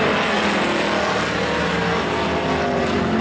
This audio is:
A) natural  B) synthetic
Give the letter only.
A